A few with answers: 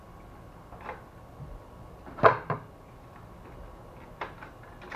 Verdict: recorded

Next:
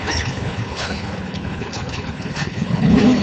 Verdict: remade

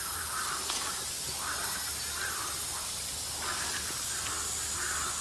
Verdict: recorded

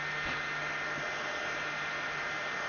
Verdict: recorded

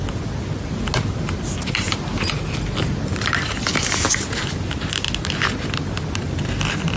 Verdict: recorded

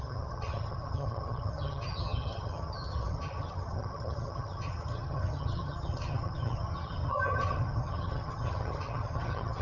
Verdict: remade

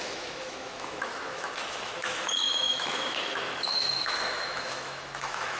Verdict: remade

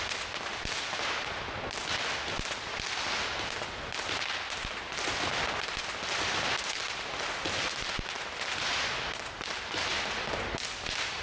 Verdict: recorded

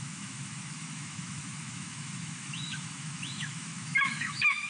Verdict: remade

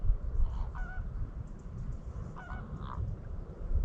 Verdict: remade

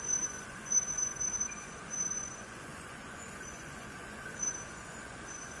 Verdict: remade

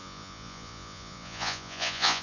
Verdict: remade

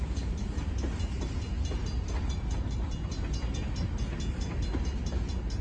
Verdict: recorded